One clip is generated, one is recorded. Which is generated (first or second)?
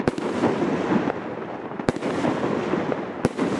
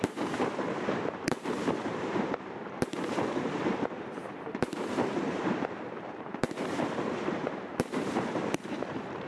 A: second